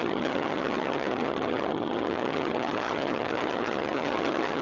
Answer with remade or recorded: remade